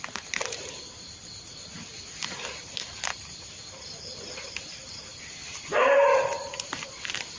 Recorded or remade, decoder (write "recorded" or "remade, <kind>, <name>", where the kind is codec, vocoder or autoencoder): remade, vocoder, BigVGAN v2